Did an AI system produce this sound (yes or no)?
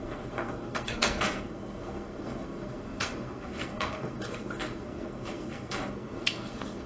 yes